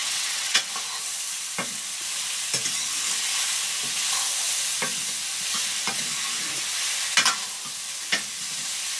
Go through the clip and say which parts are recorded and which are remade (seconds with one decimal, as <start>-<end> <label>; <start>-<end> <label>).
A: 0.0-0.7 remade; 0.7-9.0 recorded